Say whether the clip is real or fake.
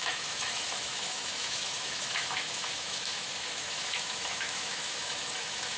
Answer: fake